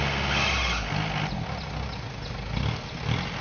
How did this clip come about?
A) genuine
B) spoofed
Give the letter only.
A